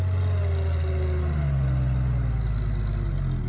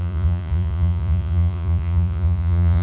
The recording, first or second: first